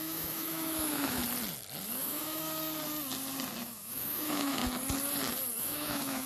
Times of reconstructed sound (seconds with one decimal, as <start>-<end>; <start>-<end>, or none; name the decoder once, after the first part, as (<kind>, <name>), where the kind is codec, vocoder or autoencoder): 0.0-1.2 (autoencoder, DAC-VAE); 2.0-2.4; 3.6-4.6; 5.6-6.3